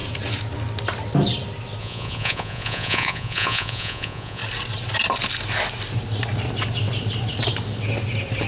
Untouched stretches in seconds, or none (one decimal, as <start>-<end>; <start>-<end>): 0.0-1.8; 4.4-8.5